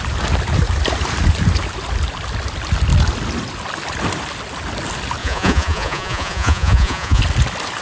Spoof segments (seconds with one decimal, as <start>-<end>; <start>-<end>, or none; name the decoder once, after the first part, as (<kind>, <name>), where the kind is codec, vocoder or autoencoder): 5.2-7.2 (vocoder, Vocos)